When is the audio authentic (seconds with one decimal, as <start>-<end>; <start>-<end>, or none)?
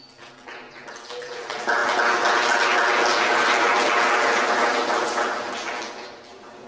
0.0-6.7